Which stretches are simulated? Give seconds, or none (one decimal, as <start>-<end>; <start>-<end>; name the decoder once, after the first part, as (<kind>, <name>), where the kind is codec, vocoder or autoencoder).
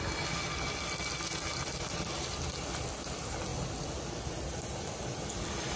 none